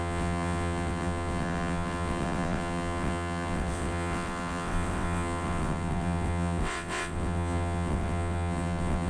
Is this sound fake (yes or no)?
yes